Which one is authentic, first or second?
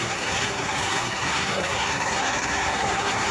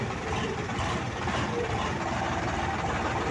second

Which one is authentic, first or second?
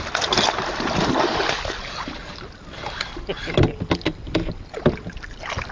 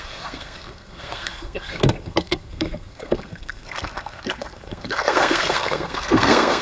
first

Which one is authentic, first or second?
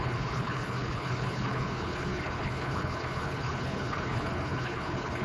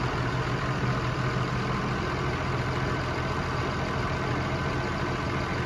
second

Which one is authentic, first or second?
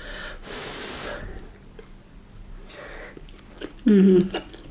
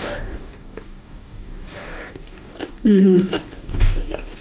first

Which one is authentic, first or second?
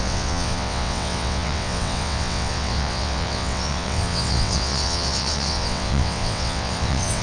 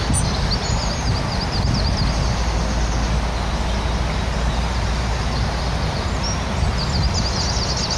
second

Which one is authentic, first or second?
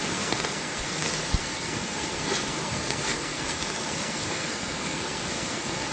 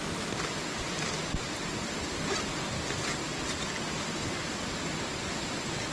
second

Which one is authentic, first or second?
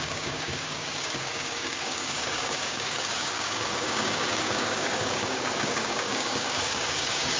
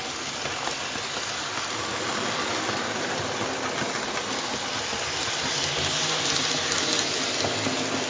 second